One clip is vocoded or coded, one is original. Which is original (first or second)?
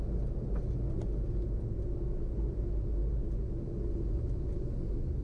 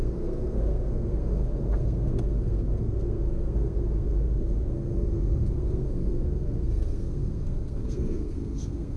first